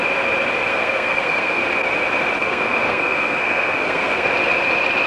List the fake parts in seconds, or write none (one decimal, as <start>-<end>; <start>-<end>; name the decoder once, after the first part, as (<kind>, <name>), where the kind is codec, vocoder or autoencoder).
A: 0.7-1.6 (codec, SNAC); 2.4-4.3